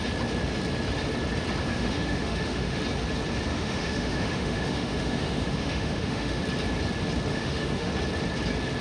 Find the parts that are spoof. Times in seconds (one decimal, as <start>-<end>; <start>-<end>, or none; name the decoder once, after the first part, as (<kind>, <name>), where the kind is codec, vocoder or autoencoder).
1.6-2.8 (autoencoder, DAC-VAE); 3.5-6.4; 7.3-7.9